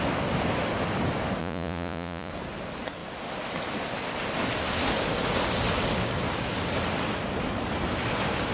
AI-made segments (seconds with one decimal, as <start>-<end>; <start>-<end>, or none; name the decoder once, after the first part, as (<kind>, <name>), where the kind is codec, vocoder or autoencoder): 1.4-2.3 (vocoder, Vocos)